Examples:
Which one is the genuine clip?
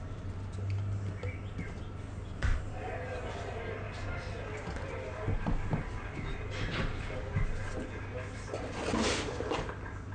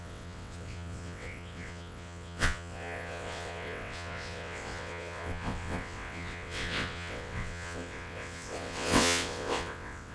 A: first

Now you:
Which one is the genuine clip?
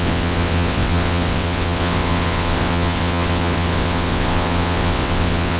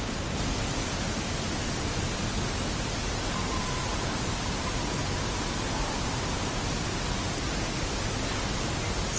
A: second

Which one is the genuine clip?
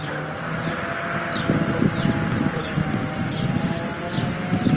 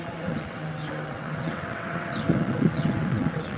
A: first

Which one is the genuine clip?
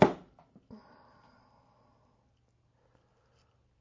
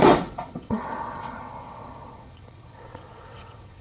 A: first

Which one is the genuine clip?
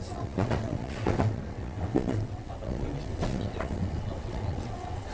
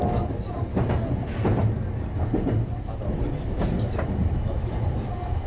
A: second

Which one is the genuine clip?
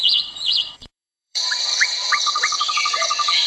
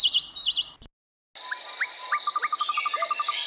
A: second